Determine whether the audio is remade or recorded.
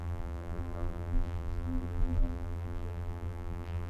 remade